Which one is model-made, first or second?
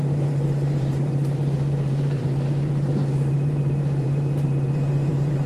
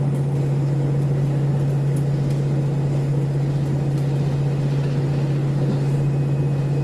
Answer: first